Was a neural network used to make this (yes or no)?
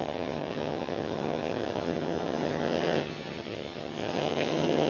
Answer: yes